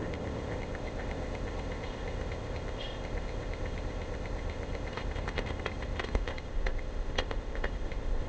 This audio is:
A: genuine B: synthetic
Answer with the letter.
B